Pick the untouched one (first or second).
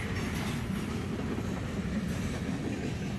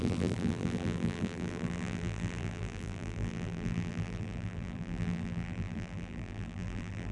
first